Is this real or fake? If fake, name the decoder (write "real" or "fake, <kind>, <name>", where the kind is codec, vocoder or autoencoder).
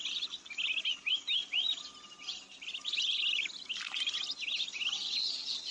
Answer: real